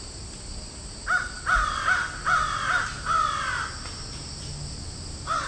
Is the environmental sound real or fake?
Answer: real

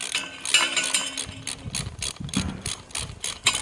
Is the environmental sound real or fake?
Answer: real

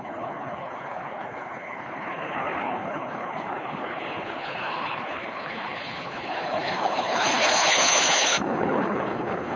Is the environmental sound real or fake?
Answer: fake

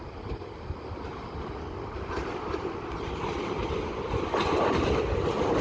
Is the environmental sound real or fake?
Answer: real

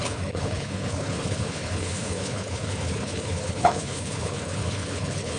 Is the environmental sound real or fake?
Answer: fake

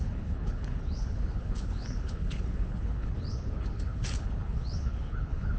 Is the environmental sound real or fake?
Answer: fake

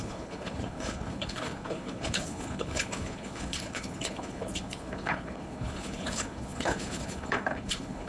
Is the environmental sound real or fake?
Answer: fake